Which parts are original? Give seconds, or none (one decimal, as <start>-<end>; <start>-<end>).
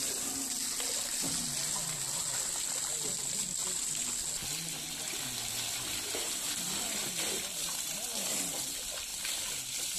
0.0-7.0; 8.5-10.0